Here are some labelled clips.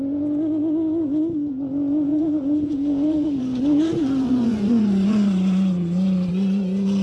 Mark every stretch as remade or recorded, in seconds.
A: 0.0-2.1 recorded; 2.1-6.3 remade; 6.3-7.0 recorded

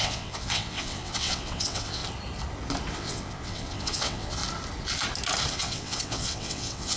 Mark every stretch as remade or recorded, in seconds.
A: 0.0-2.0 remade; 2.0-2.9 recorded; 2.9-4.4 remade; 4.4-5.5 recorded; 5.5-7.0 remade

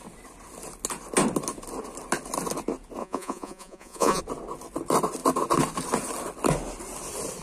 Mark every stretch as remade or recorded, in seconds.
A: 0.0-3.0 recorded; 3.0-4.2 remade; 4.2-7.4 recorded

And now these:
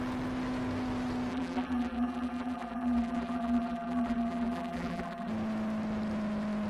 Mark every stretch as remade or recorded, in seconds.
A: 0.0-1.3 recorded; 1.3-5.3 remade; 5.3-6.7 recorded